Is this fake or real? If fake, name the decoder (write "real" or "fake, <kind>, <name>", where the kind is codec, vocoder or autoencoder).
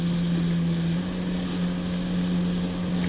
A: real